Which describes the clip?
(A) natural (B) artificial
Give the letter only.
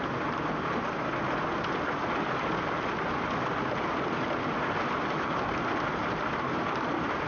A